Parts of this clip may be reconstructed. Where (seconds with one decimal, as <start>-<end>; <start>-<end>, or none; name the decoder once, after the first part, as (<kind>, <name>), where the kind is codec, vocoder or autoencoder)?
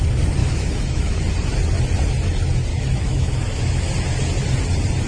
0.4-1.2 (autoencoder, DAC-VAE); 2.7-3.9